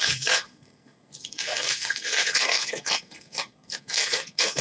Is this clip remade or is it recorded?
remade